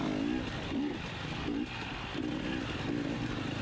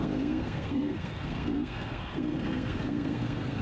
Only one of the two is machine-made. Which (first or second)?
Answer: second